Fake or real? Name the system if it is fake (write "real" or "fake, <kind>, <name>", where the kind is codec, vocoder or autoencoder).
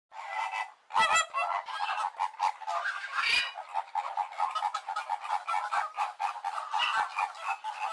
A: real